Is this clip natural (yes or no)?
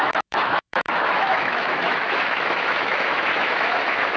no